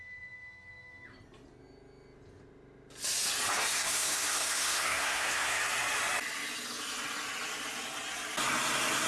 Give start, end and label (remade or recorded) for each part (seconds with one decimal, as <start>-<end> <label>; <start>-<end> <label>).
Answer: 0.0-3.7 recorded; 3.7-5.6 remade; 5.6-9.1 recorded